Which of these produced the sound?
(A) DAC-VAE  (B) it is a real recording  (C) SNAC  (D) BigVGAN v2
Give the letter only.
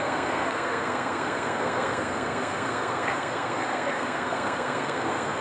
C